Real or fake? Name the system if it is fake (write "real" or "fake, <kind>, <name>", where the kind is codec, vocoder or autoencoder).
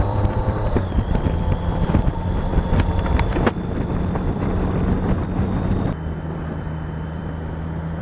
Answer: fake, vocoder, BigVGAN v2